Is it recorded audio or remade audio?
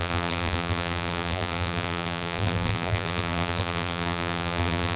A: remade